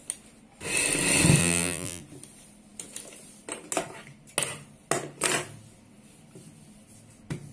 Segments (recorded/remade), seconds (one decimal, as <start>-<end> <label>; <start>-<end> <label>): 0.0-1.4 recorded; 1.4-2.0 remade; 2.0-7.5 recorded